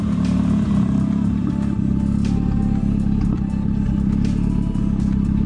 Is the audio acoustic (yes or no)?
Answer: yes